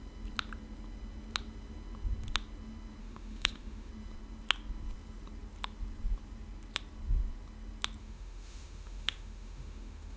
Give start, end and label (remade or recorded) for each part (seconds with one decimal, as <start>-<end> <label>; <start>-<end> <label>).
0.0-3.0 recorded; 3.0-3.9 remade; 3.9-8.0 recorded; 8.0-10.2 remade